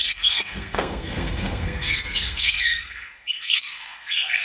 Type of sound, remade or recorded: remade